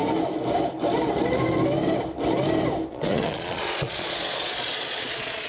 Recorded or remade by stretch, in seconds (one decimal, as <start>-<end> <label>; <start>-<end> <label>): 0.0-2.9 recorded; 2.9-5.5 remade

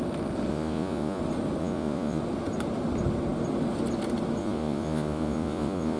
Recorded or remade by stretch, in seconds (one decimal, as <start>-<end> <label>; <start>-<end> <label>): 0.0-0.5 recorded; 0.5-1.2 remade; 1.2-1.6 recorded; 1.6-2.2 remade; 2.2-4.4 recorded; 4.4-6.0 remade

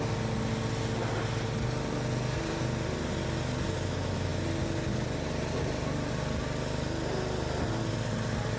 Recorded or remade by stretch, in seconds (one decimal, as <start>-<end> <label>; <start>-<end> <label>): 0.0-8.6 recorded